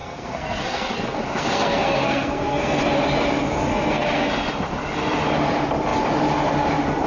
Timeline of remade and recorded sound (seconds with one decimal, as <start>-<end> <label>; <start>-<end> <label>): 0.0-2.8 remade; 2.8-3.7 recorded; 3.7-4.3 remade; 4.3-7.1 recorded